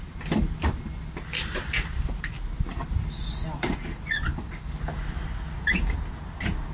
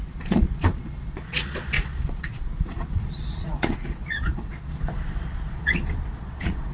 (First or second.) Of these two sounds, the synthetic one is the second